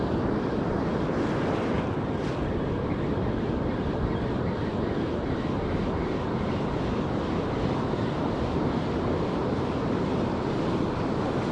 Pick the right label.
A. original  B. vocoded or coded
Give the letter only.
A